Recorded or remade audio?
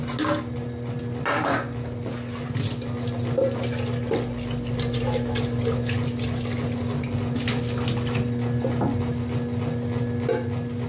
recorded